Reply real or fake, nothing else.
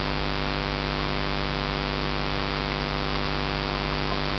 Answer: real